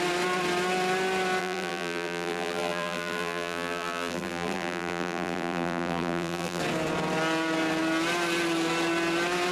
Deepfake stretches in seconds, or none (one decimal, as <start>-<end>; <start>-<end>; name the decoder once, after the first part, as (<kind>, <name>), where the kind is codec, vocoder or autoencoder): 1.4-6.6 (vocoder, BigVGAN v2)